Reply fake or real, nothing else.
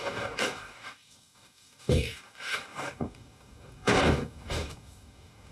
fake